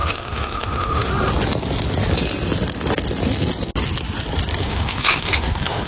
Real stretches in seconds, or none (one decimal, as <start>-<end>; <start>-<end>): 1.1-4.6